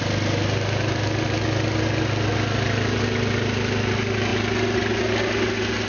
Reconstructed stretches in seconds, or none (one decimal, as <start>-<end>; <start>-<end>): none